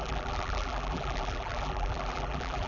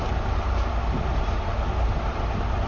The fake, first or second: first